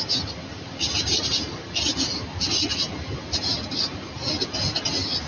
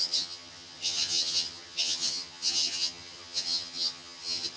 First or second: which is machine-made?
second